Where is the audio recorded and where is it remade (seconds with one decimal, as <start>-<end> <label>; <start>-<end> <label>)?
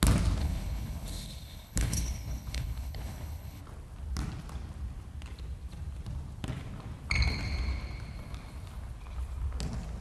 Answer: 0.0-0.4 recorded; 0.4-3.6 remade; 3.6-10.0 recorded